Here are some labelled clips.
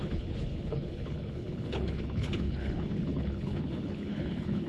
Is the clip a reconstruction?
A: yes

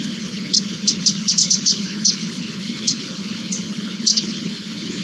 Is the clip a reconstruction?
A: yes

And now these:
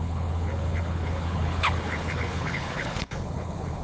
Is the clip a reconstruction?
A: yes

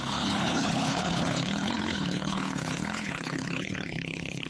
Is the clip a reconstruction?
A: yes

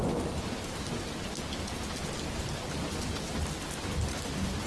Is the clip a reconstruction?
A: no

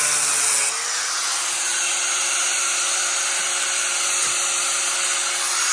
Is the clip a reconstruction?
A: no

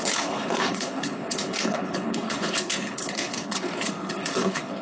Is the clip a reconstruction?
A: yes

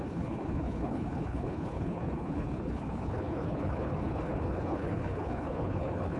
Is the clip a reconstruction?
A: yes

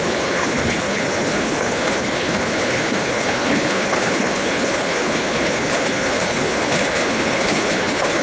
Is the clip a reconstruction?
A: yes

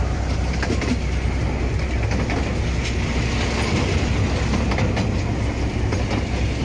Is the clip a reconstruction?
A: no